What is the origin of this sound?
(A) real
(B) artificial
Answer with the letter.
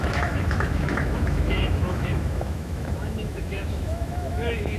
B